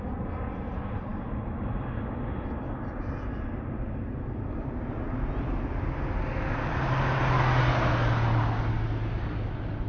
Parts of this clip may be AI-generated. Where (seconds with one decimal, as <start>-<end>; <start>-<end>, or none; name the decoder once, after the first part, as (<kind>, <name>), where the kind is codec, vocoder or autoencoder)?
none